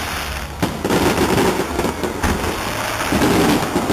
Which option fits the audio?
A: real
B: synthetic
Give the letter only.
A